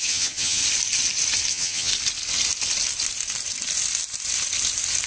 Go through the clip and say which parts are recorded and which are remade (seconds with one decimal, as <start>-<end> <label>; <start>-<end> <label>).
0.0-0.6 remade; 0.6-1.5 recorded; 1.5-1.9 remade; 1.9-5.1 recorded

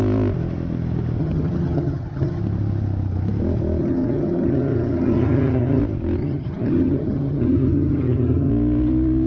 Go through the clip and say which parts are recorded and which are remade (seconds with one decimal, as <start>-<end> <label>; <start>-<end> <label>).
0.0-1.2 recorded; 1.2-2.4 remade; 2.4-3.8 recorded; 3.8-5.8 remade; 5.8-6.2 recorded; 6.2-8.5 remade; 8.5-9.3 recorded